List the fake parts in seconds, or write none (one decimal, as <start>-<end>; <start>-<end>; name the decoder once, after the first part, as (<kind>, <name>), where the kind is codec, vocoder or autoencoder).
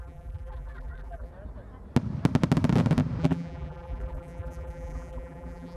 0.0-1.3 (vocoder, BigVGAN v2); 3.2-5.8